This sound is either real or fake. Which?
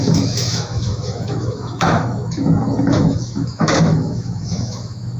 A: fake